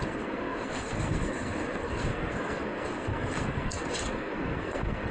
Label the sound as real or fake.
fake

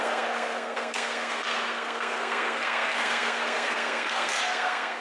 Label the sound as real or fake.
fake